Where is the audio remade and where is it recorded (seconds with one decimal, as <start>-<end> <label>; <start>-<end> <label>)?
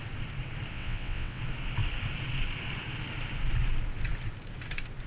0.0-0.7 recorded; 0.7-1.4 remade; 1.4-5.1 recorded